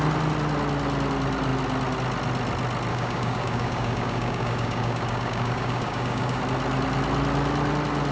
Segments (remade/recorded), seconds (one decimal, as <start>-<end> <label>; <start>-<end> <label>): 0.0-2.9 recorded; 2.9-6.4 remade; 6.4-8.1 recorded